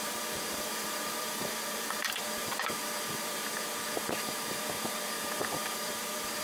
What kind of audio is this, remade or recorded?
remade